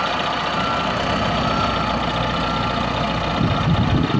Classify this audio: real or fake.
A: real